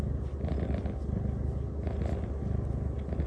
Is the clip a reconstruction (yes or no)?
no